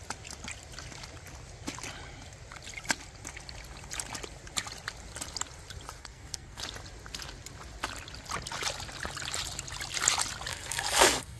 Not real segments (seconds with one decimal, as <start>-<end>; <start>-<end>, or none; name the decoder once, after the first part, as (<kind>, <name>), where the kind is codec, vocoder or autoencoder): 6.0-6.6 (codec, SNAC); 10.5-11.4